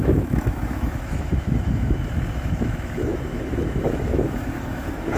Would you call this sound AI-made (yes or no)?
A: yes